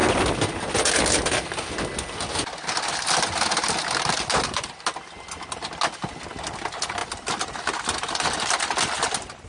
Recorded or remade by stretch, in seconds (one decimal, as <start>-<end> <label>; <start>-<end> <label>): 0.0-9.5 recorded

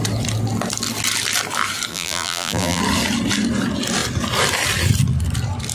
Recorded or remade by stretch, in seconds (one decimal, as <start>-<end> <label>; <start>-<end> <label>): 0.0-1.9 recorded; 1.9-2.8 remade; 2.8-5.7 recorded

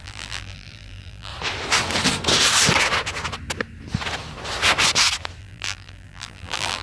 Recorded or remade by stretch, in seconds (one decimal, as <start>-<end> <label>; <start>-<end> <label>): 0.0-1.3 remade; 1.3-5.4 recorded; 5.4-6.8 remade

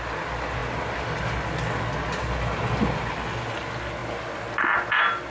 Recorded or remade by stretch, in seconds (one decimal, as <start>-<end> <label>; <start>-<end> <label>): 0.0-5.3 recorded

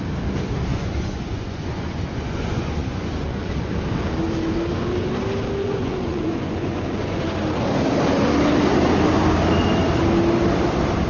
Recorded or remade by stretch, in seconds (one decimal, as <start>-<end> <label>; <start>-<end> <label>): 0.0-0.7 recorded; 0.7-3.7 remade; 3.7-5.6 recorded; 5.6-7.2 remade; 7.2-11.1 recorded

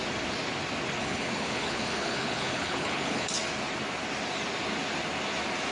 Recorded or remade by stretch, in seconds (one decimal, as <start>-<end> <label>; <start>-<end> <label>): 0.0-1.0 recorded; 1.0-3.3 remade; 3.3-5.7 recorded